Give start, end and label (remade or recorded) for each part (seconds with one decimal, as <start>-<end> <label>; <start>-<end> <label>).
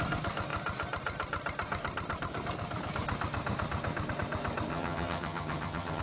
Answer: 0.0-4.7 recorded; 4.7-6.0 remade